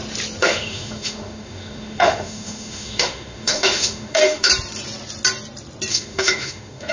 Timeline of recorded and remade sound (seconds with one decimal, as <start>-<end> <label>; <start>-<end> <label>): 0.0-0.4 recorded; 0.4-4.5 remade; 4.5-5.9 recorded; 5.9-6.9 remade